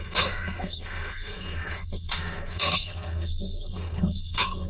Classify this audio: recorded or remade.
remade